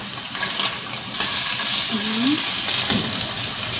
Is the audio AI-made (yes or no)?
no